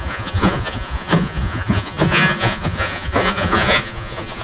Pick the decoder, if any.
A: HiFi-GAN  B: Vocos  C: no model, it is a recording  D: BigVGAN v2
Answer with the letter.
B